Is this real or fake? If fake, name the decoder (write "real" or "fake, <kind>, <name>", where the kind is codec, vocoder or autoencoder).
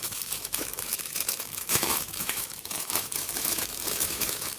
fake, autoencoder, DAC-VAE